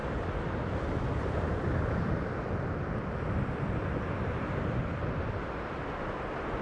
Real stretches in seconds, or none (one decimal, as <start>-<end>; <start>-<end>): 0.0-6.6